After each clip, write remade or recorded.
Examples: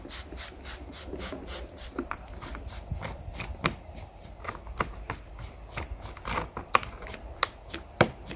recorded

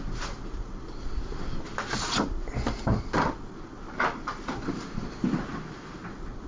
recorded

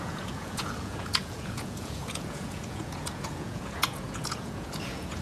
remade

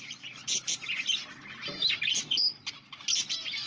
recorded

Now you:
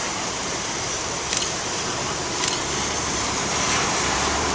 remade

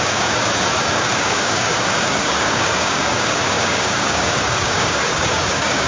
remade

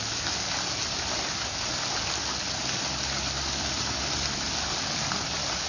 recorded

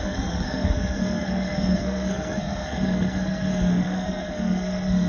remade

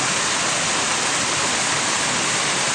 recorded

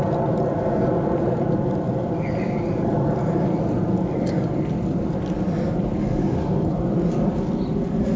recorded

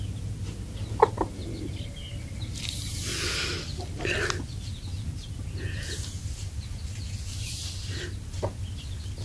recorded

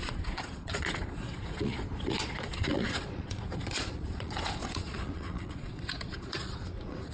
remade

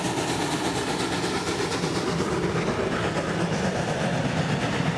recorded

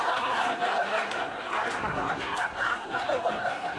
remade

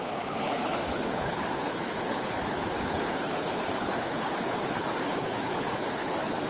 remade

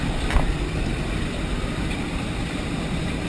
remade